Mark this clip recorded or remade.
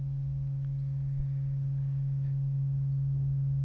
recorded